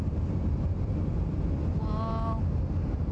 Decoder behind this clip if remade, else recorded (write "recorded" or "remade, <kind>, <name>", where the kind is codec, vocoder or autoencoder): recorded